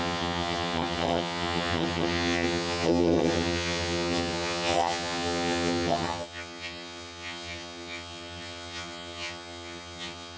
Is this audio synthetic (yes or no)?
yes